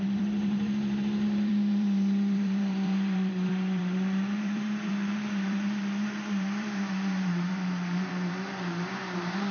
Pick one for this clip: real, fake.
fake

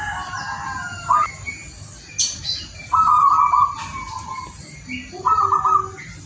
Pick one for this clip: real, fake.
real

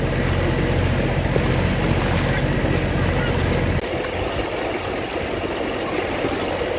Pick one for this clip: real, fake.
real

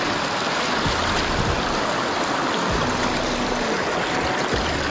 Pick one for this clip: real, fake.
real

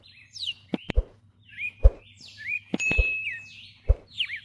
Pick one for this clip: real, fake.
fake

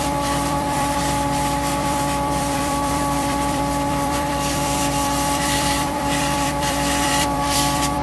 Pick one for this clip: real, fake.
fake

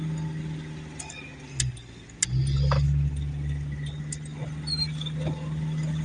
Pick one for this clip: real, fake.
real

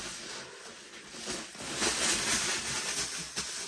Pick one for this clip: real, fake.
real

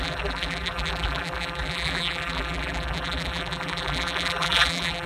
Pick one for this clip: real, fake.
fake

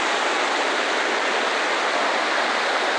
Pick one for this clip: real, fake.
real